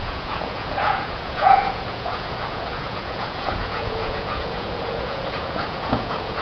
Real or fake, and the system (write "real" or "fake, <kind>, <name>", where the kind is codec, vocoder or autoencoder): fake, vocoder, Vocos